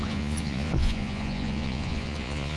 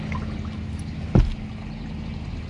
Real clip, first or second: second